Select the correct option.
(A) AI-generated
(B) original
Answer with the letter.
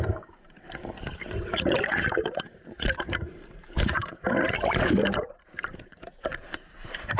A